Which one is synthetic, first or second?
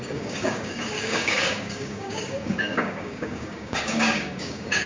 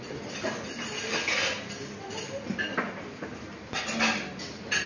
first